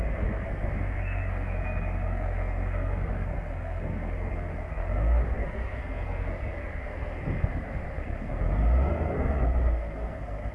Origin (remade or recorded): remade